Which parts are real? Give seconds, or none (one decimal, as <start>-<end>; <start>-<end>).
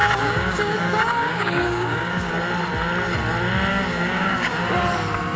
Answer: 2.3-3.7; 4.6-5.4